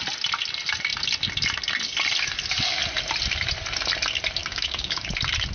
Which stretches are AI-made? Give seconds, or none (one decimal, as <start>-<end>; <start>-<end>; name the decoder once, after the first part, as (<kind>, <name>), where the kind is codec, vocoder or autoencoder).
4.4-5.1 (codec, DAC)